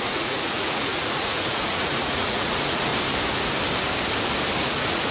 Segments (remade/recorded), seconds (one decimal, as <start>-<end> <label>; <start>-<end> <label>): 0.0-2.9 remade; 2.9-4.6 recorded; 4.6-5.1 remade